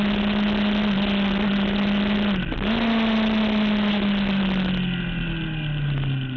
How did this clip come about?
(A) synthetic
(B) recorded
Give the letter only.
B